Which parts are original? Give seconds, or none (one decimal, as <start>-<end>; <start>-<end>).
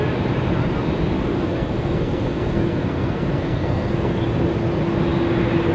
0.0-1.3; 4.2-5.7